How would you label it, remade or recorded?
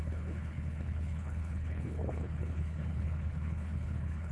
remade